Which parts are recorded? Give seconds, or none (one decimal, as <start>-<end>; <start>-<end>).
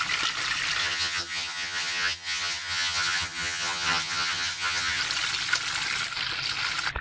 0.0-0.8; 5.0-7.0